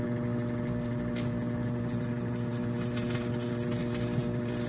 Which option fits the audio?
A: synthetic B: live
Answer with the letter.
B